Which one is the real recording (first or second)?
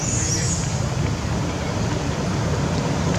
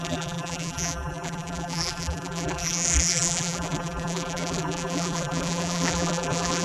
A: first